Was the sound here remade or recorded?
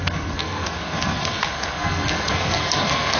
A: remade